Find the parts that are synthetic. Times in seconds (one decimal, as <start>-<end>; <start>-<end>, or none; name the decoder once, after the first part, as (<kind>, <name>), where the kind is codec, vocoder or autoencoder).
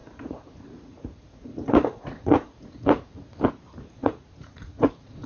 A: 0.0-3.2 (vocoder, Vocos); 4.0-5.3